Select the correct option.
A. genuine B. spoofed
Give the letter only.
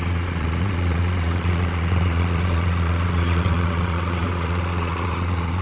B